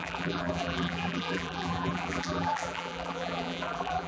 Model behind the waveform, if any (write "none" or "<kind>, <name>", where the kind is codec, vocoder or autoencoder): vocoder, BigVGAN v2